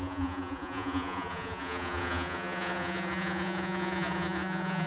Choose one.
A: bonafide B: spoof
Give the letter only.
B